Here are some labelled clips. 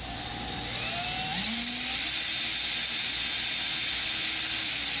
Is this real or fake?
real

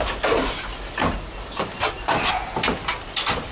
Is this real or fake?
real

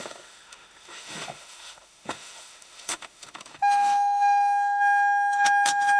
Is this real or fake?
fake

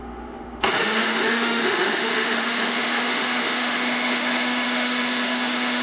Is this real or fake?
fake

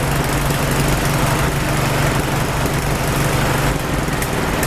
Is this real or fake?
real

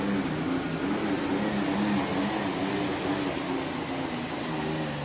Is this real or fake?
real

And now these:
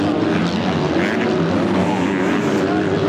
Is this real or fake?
real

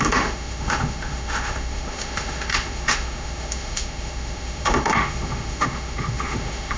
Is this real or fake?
fake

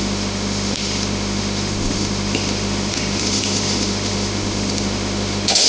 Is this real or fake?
fake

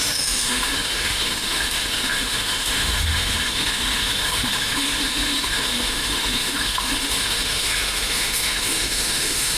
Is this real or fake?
fake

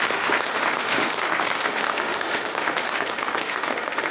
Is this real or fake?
fake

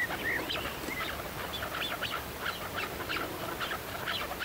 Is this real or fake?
real